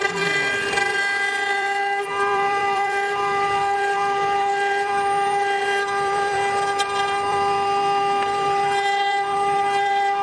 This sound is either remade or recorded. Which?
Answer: remade